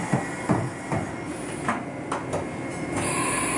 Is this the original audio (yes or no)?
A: yes